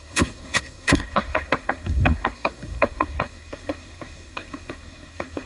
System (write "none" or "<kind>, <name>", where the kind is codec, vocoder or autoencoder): codec, SNAC